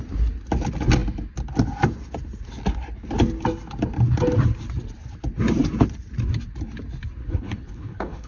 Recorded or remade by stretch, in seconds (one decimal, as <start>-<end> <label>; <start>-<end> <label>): 0.0-7.2 recorded; 7.2-8.3 remade